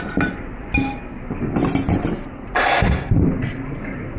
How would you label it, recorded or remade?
recorded